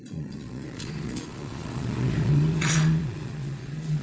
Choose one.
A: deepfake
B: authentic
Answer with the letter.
A